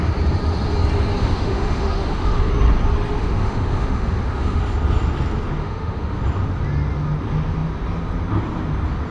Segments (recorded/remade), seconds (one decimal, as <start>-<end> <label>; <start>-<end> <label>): 0.0-1.2 recorded; 1.2-2.5 remade; 2.5-3.2 recorded; 3.2-4.6 remade; 4.6-5.6 recorded; 5.6-6.2 remade; 6.2-9.1 recorded